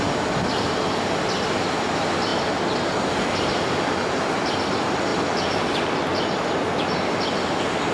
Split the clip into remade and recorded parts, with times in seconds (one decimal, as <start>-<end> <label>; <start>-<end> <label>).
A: 0.0-5.1 recorded; 5.1-5.6 remade; 5.6-7.9 recorded